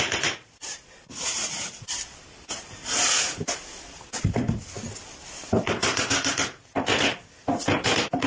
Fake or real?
real